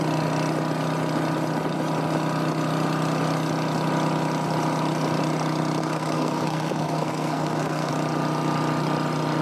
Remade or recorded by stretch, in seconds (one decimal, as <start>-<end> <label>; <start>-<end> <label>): 0.0-5.8 recorded; 5.8-7.9 remade; 7.9-9.4 recorded

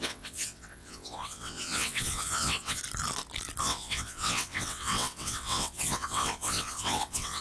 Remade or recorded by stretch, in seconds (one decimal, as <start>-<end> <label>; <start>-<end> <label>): 0.0-2.8 remade; 2.8-3.6 recorded; 3.6-7.4 remade

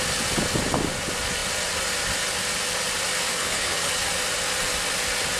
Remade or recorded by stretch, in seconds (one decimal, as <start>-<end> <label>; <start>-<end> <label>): 0.0-3.3 recorded; 3.3-3.9 remade; 3.9-5.4 recorded

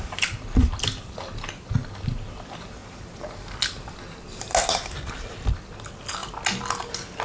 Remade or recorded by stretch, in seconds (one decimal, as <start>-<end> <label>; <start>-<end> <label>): 0.0-7.2 recorded

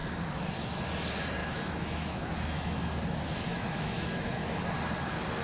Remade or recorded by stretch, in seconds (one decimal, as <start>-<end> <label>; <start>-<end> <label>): 0.0-1.4 recorded; 1.4-3.0 remade; 3.0-3.5 recorded; 3.5-4.6 remade; 4.6-5.4 recorded

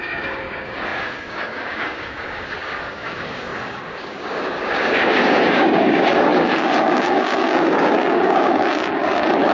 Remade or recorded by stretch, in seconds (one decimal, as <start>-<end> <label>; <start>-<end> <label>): 0.0-9.5 remade

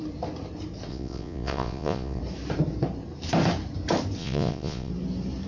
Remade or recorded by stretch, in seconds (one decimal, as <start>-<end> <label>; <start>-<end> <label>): 0.0-0.9 recorded; 0.9-2.2 remade; 2.2-4.2 recorded; 4.2-4.9 remade; 4.9-5.5 recorded